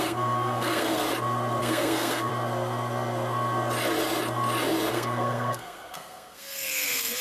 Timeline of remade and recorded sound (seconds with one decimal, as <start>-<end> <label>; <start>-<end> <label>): 0.0-1.0 remade; 1.0-1.6 recorded; 1.6-2.3 remade; 2.3-4.9 recorded; 4.9-7.2 remade